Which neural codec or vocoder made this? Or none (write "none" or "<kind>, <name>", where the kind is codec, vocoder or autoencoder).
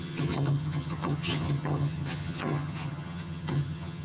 vocoder, HiFi-GAN